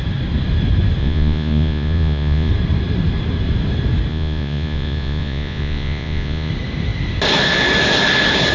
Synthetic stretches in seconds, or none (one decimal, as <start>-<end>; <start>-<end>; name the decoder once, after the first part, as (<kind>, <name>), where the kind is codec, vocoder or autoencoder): 1.0-2.5 (vocoder, Vocos); 4.1-6.5